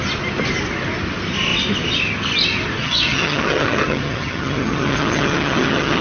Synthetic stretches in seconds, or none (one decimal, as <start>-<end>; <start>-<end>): 2.8-6.0